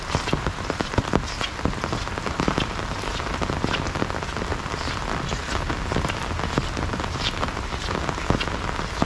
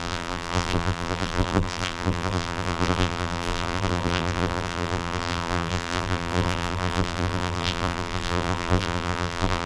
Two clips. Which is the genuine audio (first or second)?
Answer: first